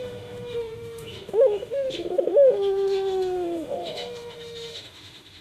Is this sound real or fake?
fake